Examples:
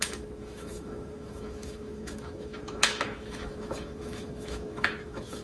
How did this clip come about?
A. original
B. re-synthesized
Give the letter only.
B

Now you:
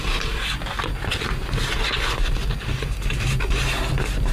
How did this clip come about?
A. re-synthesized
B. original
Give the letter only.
B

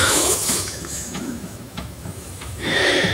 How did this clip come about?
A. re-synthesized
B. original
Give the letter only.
A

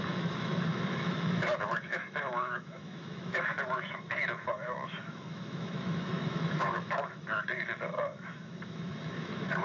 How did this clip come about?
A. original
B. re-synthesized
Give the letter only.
B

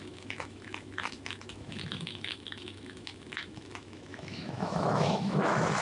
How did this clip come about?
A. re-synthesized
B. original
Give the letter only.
A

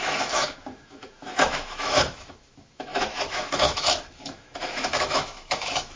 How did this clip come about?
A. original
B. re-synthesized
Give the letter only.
B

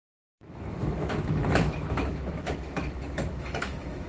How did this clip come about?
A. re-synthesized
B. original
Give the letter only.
A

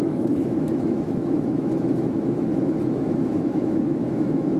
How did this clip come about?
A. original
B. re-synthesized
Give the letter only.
B